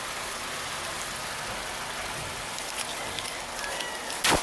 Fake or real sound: real